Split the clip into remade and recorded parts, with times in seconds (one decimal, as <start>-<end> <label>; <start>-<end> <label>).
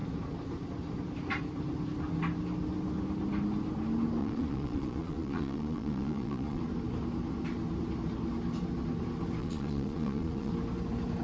0.0-4.2 recorded; 4.2-6.6 remade; 6.6-9.4 recorded; 9.4-10.5 remade; 10.5-11.2 recorded